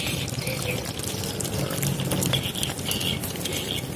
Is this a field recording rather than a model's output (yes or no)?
yes